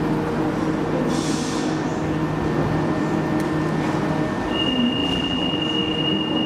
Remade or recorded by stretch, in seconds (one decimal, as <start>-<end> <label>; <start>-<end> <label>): 0.0-5.0 recorded; 5.0-5.6 remade; 5.6-6.5 recorded

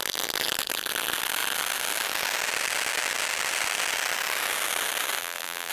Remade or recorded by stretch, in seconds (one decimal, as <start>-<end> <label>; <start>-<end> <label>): 0.0-5.2 recorded; 5.2-5.7 remade

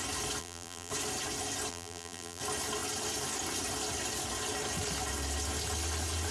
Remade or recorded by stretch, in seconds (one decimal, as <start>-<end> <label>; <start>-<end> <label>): 0.0-0.4 recorded; 0.4-0.9 remade; 0.9-1.7 recorded; 1.7-2.4 remade; 2.4-6.3 recorded